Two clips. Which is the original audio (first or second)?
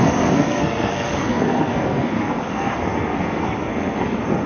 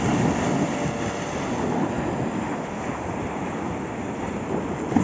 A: second